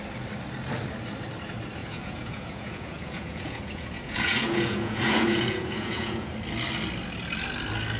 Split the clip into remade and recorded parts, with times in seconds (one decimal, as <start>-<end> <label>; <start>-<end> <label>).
0.0-1.8 recorded; 1.8-6.3 remade; 6.3-8.0 recorded